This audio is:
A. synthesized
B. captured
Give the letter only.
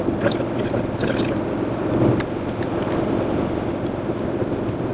B